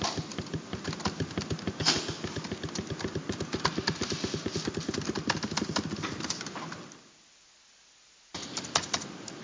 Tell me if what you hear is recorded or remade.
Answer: recorded